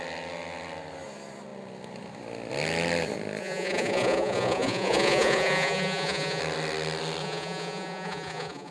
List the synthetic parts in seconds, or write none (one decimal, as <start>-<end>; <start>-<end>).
3.4-6.4; 7.2-8.7